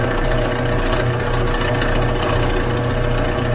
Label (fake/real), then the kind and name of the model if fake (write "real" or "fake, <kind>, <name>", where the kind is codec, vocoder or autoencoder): real